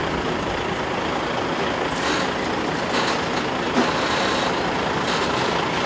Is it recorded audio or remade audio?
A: recorded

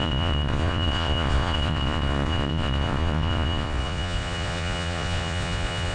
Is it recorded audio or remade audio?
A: remade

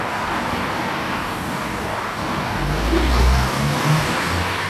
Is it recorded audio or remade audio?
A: remade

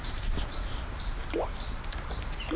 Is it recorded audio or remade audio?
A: remade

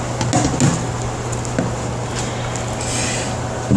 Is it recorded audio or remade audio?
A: recorded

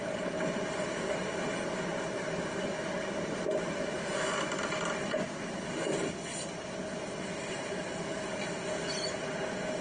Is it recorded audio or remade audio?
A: recorded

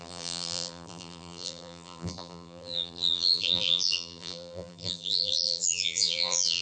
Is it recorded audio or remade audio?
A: remade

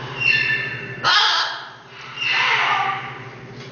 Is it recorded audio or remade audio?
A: recorded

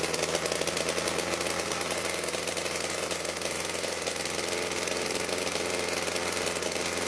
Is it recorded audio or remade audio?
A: recorded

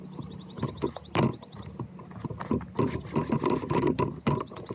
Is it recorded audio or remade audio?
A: recorded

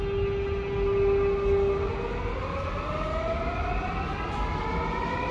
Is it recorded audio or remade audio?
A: recorded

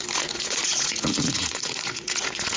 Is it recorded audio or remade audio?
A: remade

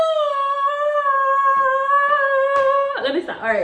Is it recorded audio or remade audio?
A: recorded